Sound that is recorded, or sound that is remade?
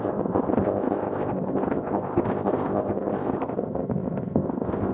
remade